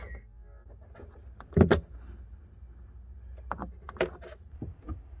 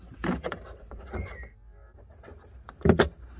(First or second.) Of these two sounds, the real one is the first